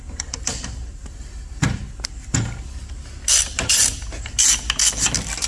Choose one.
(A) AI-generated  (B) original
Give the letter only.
B